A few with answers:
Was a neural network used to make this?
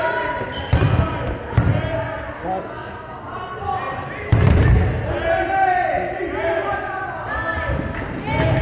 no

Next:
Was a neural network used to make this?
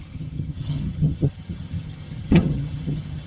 yes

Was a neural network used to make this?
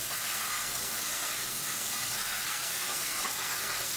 yes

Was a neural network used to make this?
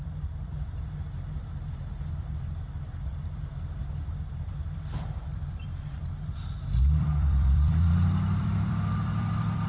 yes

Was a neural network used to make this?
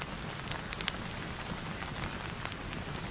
no